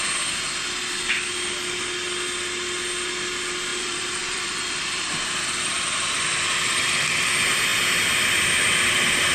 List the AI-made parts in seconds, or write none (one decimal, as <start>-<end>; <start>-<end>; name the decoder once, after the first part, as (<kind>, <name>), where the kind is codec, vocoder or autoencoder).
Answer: 3.7-7.3 (vocoder, BigVGAN v2)

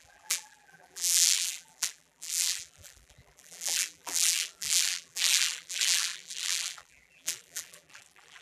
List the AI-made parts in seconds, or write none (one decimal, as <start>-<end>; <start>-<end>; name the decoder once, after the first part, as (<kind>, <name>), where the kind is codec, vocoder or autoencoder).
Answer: 0.0-8.4 (vocoder, BigVGAN v2)

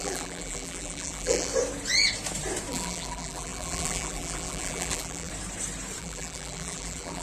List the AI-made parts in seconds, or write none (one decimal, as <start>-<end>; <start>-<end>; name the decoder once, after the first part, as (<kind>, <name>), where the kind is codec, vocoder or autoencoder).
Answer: 0.0-1.5 (vocoder, BigVGAN v2); 2.7-5.3; 6.0-7.2

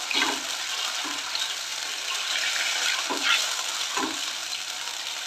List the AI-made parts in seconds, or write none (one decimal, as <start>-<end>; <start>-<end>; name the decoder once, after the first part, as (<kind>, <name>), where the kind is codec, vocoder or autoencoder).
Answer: none

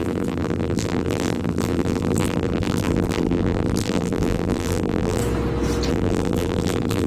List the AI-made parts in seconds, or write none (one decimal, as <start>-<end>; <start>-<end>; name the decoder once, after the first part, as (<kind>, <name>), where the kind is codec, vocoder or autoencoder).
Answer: 0.0-5.2 (vocoder, BigVGAN v2); 5.9-7.1